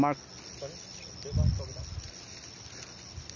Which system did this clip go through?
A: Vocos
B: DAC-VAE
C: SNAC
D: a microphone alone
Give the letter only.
D